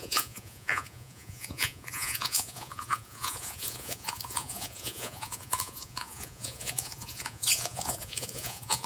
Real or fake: fake